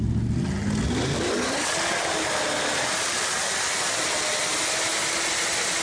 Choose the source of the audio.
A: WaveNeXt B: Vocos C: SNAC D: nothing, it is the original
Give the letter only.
D